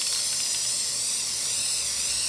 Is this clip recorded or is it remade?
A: recorded